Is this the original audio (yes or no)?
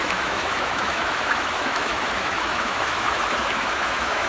no